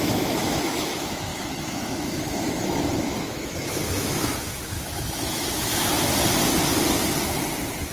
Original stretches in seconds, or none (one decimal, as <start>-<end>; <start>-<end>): 5.9-7.9